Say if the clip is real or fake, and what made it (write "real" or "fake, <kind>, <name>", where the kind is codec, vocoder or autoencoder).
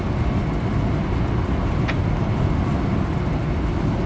real